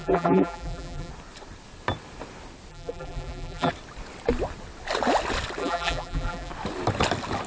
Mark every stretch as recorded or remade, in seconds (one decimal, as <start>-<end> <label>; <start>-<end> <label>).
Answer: 0.0-1.1 remade; 1.1-2.7 recorded; 2.7-3.7 remade; 3.7-5.6 recorded; 5.6-6.5 remade; 6.5-7.5 recorded